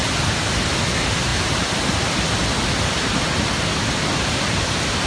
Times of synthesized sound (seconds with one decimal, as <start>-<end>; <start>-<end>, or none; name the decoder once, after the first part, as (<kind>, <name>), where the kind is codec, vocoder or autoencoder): none